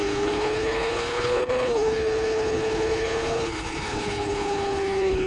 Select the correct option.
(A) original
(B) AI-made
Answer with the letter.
B